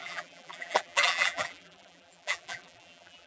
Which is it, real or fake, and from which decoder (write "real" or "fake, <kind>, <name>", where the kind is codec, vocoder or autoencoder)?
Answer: fake, vocoder, BigVGAN v2